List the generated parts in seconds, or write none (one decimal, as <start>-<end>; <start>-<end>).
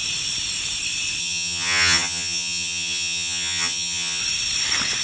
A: 1.2-4.2